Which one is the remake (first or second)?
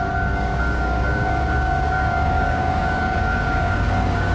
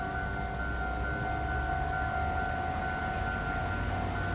first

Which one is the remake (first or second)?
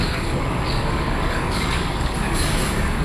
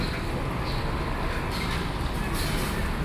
first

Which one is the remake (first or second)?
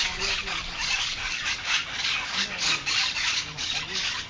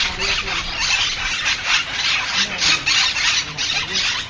first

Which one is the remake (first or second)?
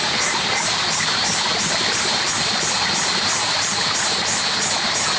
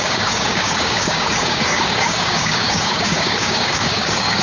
second